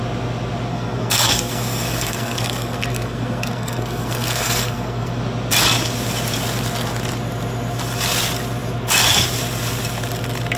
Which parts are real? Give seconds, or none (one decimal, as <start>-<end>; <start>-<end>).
0.0-0.7; 5.2-10.6